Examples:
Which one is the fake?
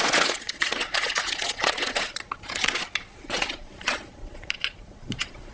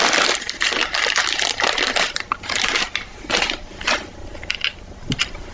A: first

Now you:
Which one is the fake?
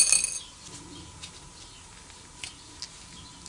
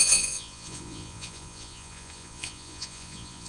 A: second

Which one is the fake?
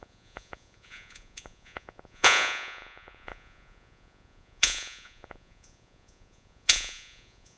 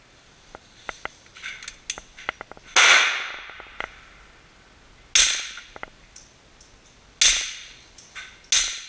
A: first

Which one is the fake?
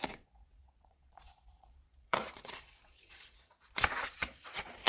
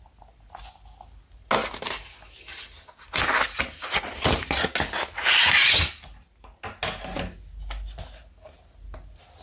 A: first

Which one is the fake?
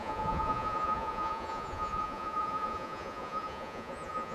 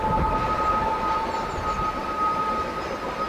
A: first